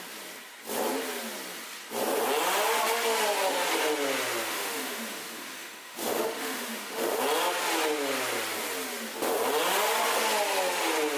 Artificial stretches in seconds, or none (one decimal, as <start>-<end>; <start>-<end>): 4.5-7.2